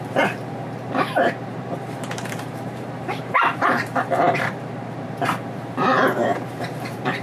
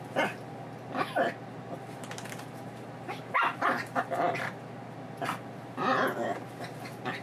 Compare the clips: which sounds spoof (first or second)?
first